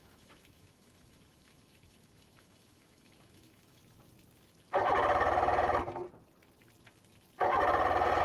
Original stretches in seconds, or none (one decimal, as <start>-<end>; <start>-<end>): 3.8-8.2